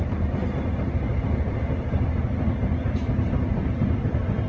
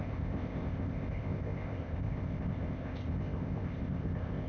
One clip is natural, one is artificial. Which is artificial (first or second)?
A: second